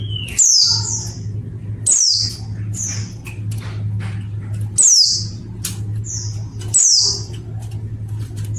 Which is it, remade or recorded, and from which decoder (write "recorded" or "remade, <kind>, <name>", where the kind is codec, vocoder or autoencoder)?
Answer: recorded